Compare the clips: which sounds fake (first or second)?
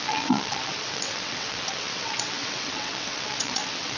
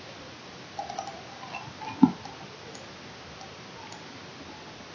first